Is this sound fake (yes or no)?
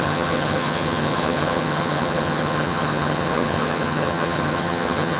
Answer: yes